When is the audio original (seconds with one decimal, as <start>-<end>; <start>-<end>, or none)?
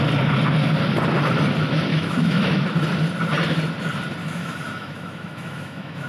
0.0-1.9; 2.6-4.2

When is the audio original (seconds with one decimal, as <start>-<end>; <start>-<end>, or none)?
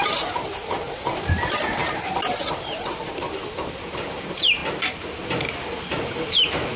1.8-2.5; 4.6-5.8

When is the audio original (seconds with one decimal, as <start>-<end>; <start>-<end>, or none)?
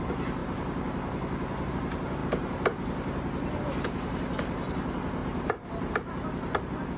0.0-5.2; 5.9-7.0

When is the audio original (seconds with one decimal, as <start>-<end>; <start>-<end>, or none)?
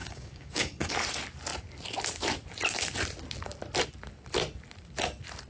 0.9-5.5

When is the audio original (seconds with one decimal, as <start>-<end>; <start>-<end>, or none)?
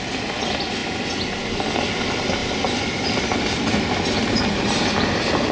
0.0-5.5